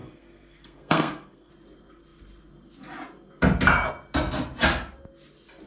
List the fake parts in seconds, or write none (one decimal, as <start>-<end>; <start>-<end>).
0.0-1.5